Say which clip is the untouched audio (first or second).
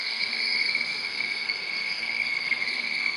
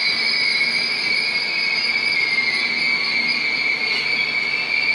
second